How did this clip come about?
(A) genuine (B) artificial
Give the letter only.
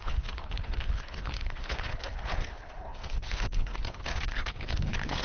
B